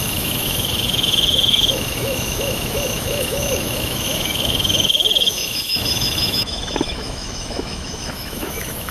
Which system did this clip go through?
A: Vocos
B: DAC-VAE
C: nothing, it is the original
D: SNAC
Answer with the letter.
B